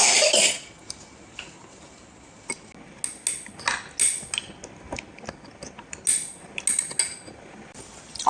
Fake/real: real